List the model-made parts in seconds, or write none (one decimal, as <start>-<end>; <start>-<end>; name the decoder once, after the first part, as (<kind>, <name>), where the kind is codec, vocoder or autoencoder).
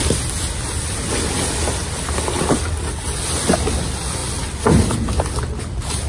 none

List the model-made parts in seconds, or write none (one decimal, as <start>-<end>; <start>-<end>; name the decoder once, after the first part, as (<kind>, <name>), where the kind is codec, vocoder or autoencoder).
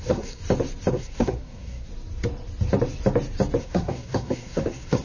0.0-0.4 (codec, SNAC); 0.9-1.9; 3.6-5.0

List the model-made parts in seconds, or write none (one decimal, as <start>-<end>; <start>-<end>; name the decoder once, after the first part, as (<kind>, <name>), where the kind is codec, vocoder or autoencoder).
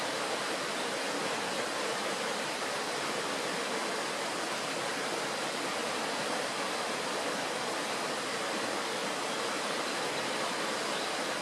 none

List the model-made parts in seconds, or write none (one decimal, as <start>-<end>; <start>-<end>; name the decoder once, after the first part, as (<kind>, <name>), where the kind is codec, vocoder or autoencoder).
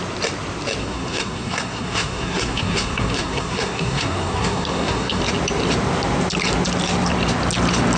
0.8-5.2 (codec, SNAC)